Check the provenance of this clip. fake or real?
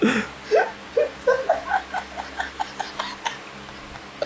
real